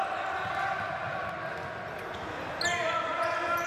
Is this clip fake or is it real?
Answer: real